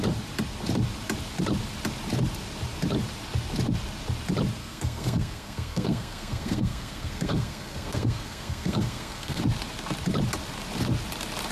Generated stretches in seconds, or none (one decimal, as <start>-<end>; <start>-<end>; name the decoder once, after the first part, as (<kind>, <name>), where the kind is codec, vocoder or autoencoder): 4.6-9.4 (codec, SNAC)